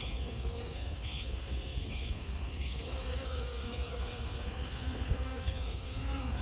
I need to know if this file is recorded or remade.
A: remade